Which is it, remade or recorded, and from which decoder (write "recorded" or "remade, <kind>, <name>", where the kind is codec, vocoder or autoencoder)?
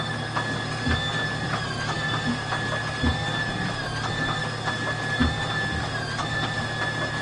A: recorded